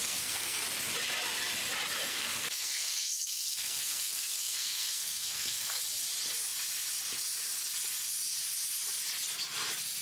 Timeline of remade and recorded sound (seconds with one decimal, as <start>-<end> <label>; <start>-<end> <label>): 0.0-0.6 remade; 0.6-2.0 recorded; 2.0-5.8 remade; 5.8-10.0 recorded